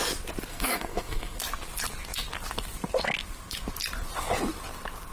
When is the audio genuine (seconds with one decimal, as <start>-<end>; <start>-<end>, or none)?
0.0-0.5; 1.4-5.1